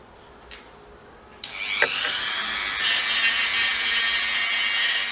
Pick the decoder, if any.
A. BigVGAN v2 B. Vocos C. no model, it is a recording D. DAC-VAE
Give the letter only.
C